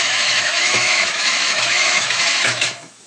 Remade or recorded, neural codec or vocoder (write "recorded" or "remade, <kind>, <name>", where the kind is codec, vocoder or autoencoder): remade, autoencoder, DAC-VAE